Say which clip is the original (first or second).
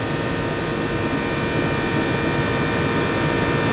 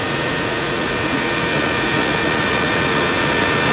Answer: first